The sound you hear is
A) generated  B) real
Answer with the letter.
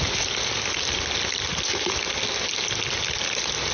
B